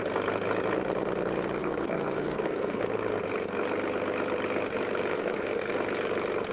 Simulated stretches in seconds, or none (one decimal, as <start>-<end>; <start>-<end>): 1.6-2.8; 5.1-5.7